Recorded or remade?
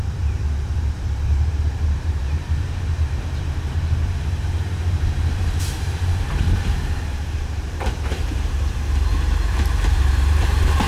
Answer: remade